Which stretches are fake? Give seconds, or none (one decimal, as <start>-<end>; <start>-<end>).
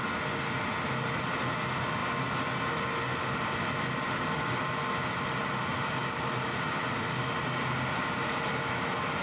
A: none